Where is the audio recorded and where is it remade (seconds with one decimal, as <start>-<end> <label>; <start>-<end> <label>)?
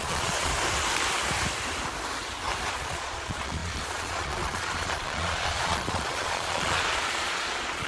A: 0.0-0.5 remade; 0.5-2.7 recorded; 2.7-7.9 remade